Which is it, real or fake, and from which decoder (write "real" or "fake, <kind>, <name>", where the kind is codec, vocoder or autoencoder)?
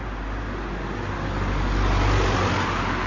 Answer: real